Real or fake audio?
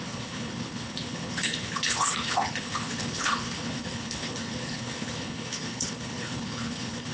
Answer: fake